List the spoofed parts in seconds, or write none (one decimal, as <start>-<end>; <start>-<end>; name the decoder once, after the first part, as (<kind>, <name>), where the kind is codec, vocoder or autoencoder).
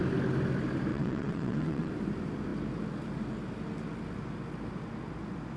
0.9-1.9 (vocoder, WaveNeXt)